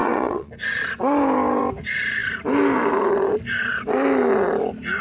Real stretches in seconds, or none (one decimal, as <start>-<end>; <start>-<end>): 0.5-5.0